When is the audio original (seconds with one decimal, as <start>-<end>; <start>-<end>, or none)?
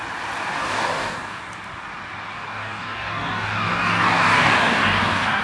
0.0-0.4; 1.4-2.3